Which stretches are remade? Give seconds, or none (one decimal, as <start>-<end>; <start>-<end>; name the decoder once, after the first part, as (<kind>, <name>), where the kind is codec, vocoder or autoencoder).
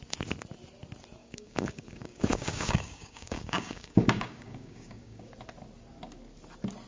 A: 1.2-5.3 (codec, DAC)